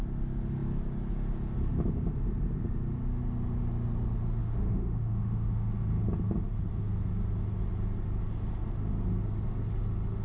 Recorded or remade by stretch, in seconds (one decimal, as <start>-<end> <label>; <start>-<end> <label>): 0.0-4.4 recorded; 4.4-5.7 remade; 5.7-10.2 recorded